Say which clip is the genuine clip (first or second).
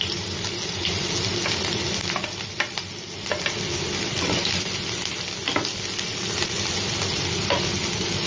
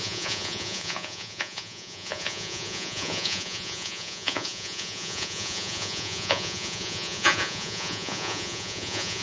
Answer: first